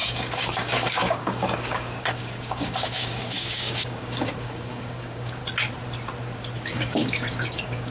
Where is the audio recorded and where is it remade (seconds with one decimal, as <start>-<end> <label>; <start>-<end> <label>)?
0.0-5.4 remade; 5.4-6.6 recorded; 6.6-7.9 remade